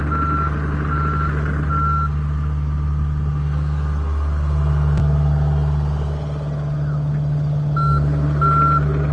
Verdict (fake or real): real